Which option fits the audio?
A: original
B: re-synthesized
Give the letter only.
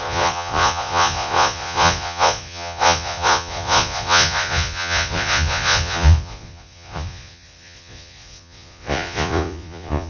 B